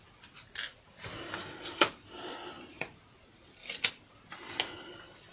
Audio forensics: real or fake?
real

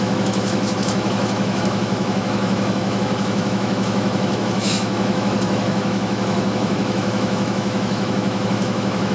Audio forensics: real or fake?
fake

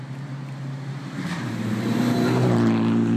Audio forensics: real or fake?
real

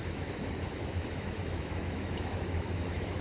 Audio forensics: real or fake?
fake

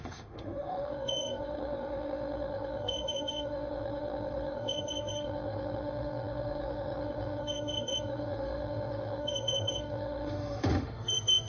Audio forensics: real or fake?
fake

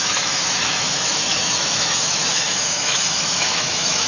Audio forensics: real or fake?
fake